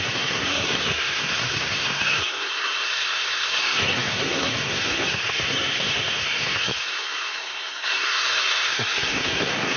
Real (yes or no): no